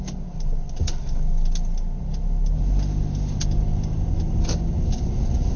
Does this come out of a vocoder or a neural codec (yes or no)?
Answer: no